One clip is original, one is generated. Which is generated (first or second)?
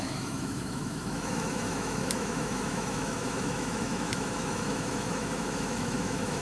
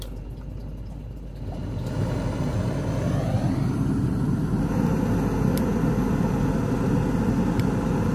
first